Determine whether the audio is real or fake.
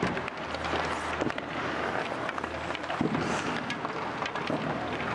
real